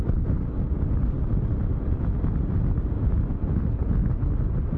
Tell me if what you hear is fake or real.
real